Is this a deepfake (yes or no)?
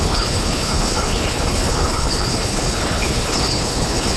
yes